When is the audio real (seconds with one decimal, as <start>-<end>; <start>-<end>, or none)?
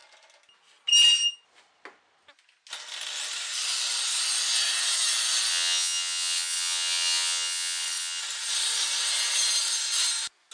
0.0-5.5; 8.2-10.5